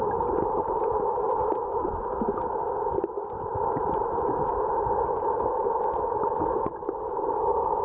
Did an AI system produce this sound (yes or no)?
no